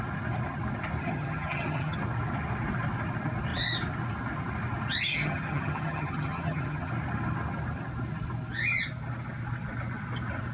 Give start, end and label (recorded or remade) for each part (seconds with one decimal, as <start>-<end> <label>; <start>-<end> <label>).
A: 0.0-1.0 recorded; 1.0-2.0 remade; 2.0-5.1 recorded; 5.1-6.9 remade; 6.9-10.5 recorded